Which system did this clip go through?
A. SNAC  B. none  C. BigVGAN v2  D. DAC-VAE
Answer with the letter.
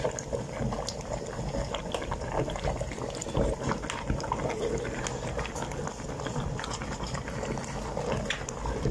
B